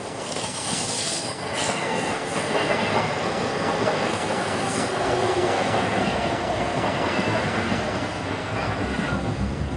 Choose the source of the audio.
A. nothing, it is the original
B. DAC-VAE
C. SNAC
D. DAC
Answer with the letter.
C